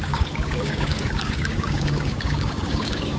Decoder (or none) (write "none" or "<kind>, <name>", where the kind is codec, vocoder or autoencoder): codec, DAC